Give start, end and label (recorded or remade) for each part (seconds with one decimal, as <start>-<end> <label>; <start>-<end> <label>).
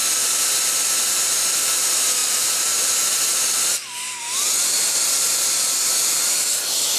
0.0-7.0 recorded